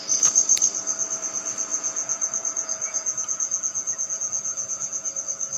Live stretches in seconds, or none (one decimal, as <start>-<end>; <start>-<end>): 0.0-1.7; 5.1-5.6